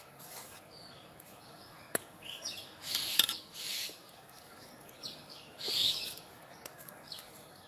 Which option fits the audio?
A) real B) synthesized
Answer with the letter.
B